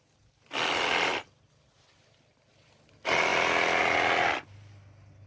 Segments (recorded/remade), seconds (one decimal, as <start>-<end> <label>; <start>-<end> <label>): 0.0-5.3 recorded